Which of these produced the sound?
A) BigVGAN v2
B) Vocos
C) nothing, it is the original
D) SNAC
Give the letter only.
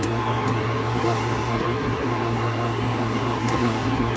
D